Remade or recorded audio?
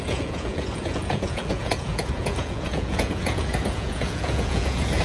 remade